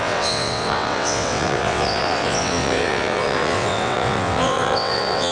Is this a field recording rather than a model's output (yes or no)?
no